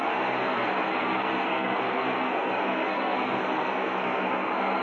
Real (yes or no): no